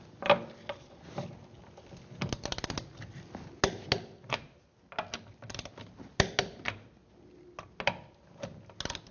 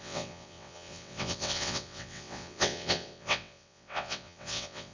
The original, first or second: first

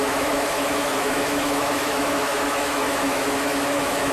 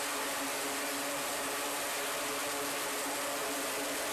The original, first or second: second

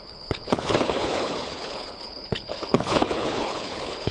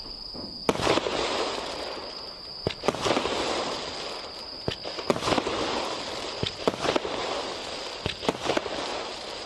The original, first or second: second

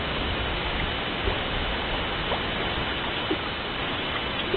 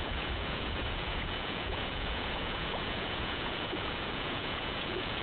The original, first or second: first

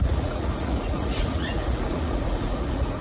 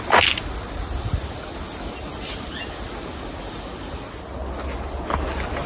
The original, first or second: second